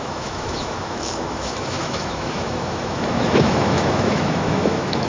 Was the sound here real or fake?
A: fake